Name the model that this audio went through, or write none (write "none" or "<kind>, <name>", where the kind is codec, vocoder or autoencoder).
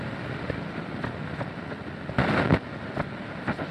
none